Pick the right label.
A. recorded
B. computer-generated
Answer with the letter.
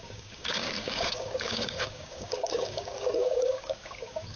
B